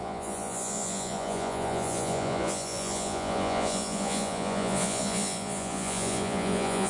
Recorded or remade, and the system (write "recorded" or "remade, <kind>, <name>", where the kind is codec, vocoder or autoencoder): remade, vocoder, Vocos